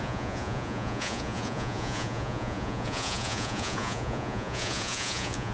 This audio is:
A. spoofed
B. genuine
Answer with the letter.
A